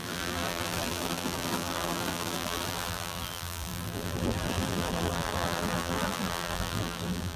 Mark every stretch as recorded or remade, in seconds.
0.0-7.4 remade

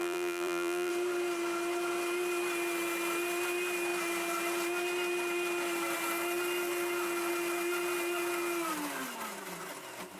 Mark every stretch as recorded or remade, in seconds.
0.0-0.9 remade; 0.9-10.2 recorded

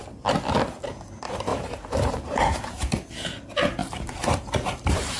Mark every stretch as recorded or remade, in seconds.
0.0-1.5 recorded; 1.5-2.9 remade; 2.9-3.8 recorded; 3.8-5.2 remade

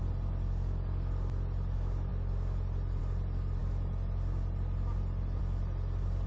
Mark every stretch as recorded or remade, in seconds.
0.0-6.3 recorded